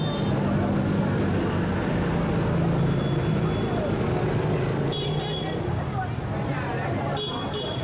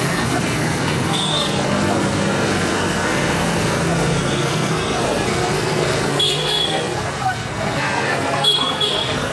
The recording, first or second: first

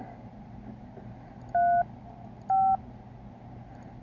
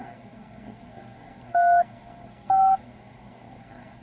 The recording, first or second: first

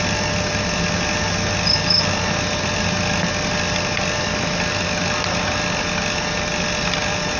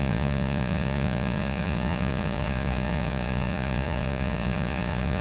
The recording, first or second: first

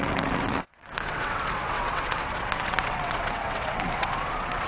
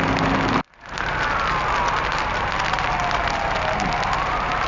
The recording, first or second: second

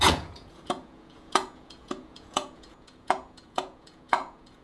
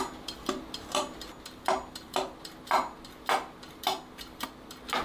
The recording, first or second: second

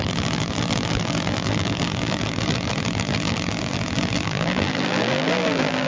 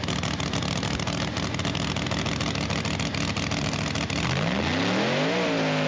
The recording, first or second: second